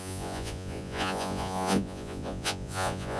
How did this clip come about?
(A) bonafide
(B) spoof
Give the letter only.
B